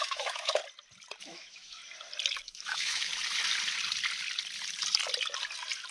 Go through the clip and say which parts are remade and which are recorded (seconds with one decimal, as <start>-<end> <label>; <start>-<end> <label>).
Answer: 0.0-0.6 remade; 0.6-1.2 recorded; 1.2-1.8 remade; 1.8-2.4 recorded; 2.4-3.1 remade; 3.1-5.9 recorded